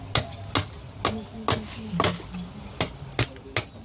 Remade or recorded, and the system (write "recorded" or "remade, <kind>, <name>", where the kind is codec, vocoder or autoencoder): recorded